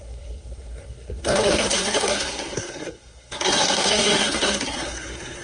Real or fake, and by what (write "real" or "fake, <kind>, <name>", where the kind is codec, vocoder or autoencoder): fake, codec, SNAC